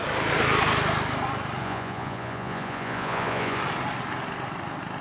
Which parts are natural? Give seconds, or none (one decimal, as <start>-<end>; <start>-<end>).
0.0-1.6; 3.6-5.0